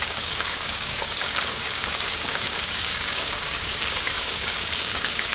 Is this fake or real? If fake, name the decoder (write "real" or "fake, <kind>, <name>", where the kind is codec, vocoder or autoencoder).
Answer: fake, codec, DAC